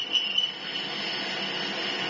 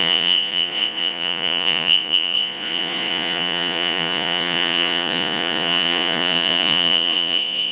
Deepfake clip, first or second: second